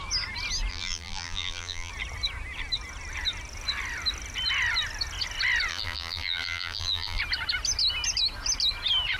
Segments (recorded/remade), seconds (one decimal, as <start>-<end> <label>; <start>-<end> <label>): 0.0-0.7 recorded; 0.7-1.9 remade; 1.9-5.7 recorded; 5.7-7.2 remade; 7.2-9.2 recorded